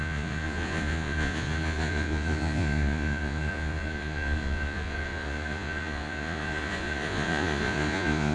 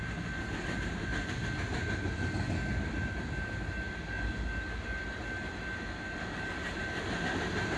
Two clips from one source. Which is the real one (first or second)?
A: second